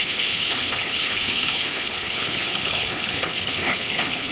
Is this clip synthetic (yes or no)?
yes